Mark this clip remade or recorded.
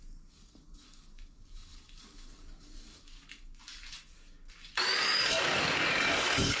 remade